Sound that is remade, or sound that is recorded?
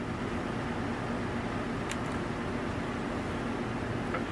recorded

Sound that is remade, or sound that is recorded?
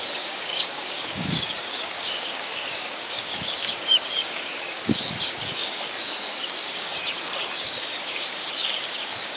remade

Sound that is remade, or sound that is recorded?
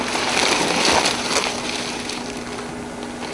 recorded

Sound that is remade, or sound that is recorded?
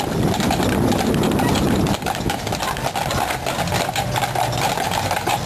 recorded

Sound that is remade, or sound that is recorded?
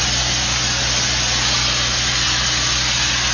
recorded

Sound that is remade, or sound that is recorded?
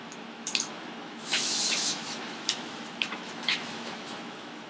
remade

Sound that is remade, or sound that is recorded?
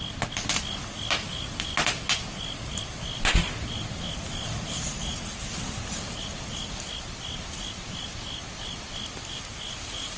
recorded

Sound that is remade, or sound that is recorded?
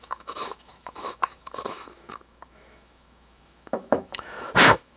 remade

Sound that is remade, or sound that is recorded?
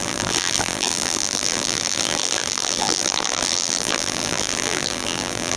remade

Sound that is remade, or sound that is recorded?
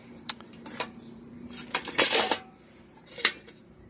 remade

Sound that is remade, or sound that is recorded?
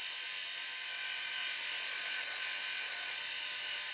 recorded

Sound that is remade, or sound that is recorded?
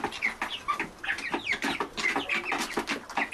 recorded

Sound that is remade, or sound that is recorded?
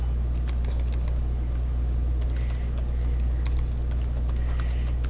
recorded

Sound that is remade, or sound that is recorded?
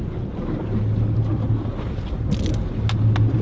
recorded